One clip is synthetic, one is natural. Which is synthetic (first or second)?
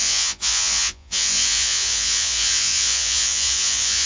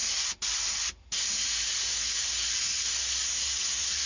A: first